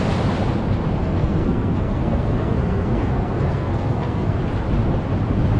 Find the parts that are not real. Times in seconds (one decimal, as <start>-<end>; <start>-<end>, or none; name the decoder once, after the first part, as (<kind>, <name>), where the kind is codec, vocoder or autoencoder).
1.0-4.4 (codec, SNAC)